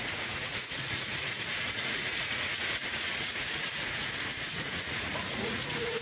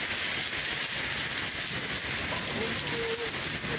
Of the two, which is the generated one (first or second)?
first